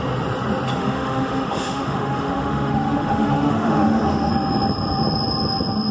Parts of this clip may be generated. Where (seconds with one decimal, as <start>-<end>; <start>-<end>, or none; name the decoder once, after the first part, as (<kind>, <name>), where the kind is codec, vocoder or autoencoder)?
0.8-4.3 (autoencoder, DAC-VAE)